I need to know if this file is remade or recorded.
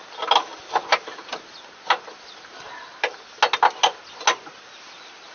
recorded